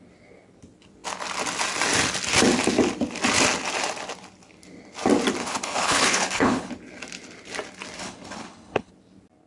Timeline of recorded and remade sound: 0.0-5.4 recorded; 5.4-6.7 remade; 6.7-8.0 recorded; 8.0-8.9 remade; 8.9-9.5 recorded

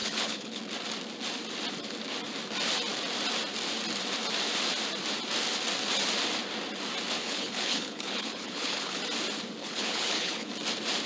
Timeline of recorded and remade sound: 0.0-0.6 remade; 0.6-7.2 recorded; 7.2-9.0 remade; 9.0-9.6 recorded; 9.6-10.5 remade; 10.5-11.1 recorded

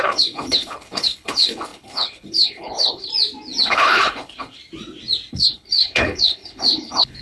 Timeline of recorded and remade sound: 0.0-3.1 remade; 3.1-3.7 recorded; 3.7-4.6 remade; 4.6-5.3 recorded; 5.3-7.2 remade

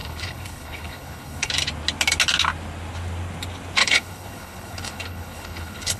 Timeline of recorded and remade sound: 0.0-1.5 remade; 1.5-3.8 recorded; 3.8-6.0 remade

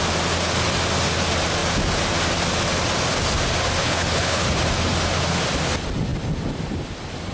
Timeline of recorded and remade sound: 0.0-3.8 recorded; 3.8-4.6 remade; 4.6-7.3 recorded

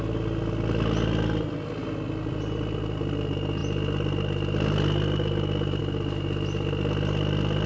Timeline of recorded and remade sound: 0.0-7.7 recorded

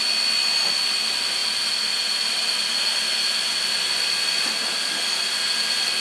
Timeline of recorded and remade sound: 0.0-6.0 recorded